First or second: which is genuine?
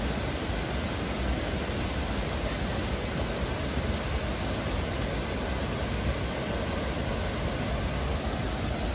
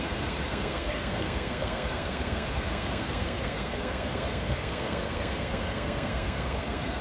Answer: first